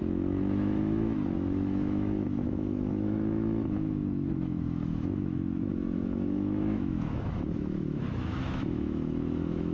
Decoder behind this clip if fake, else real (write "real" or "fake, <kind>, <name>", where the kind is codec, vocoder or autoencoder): fake, autoencoder, DAC-VAE